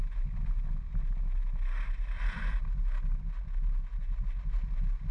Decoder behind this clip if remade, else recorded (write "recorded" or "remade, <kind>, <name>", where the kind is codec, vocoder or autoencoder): recorded